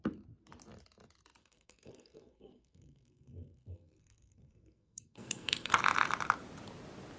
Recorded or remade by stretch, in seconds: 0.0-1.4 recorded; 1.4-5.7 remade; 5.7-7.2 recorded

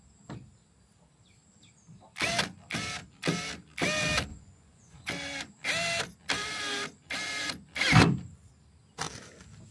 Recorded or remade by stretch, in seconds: 0.0-4.3 recorded; 4.3-5.1 remade; 5.1-9.7 recorded

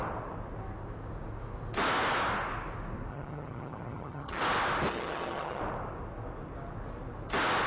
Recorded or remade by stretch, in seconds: 0.0-3.1 recorded; 3.1-4.4 remade; 4.4-4.9 recorded; 4.9-5.6 remade; 5.6-7.7 recorded